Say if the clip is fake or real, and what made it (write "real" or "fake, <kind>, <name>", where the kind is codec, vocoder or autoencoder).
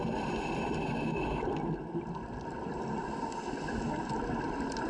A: real